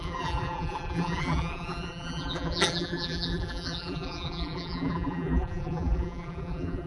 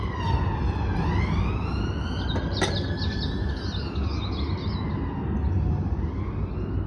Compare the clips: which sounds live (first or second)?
second